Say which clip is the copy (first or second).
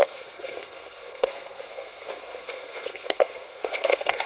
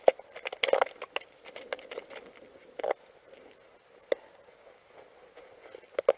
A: first